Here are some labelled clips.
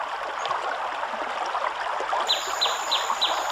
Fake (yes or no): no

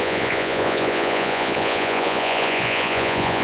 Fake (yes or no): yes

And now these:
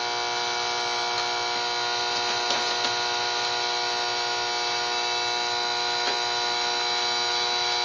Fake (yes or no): no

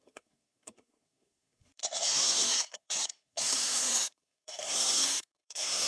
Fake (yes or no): yes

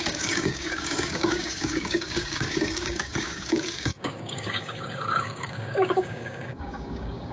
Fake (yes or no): yes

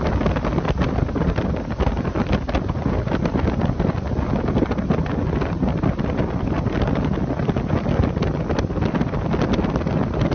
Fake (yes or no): no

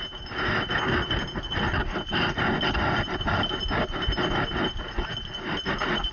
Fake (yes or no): no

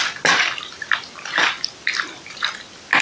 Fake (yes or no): no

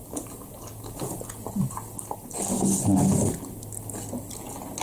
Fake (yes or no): no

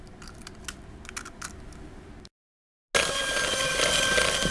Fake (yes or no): no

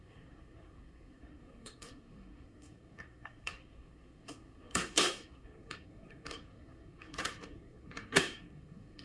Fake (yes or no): yes